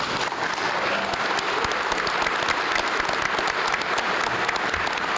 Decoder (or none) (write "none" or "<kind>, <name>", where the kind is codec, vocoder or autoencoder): none